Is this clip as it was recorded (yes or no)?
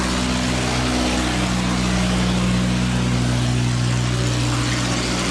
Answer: yes